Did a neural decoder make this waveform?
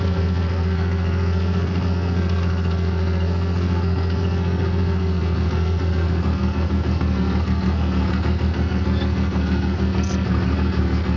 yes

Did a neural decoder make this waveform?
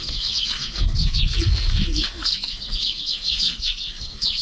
yes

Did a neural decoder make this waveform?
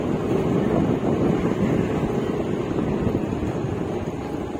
no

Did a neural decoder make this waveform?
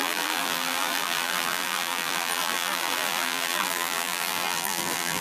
yes